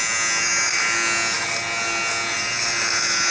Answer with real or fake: real